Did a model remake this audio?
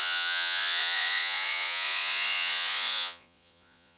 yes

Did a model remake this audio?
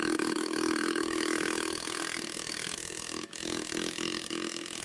yes